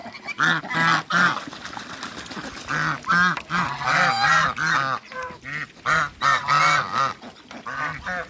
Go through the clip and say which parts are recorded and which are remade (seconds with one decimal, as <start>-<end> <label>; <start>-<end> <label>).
0.0-8.3 recorded